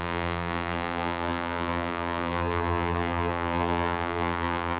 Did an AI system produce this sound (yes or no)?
yes